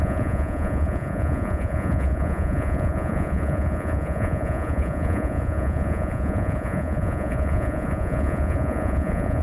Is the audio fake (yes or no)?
yes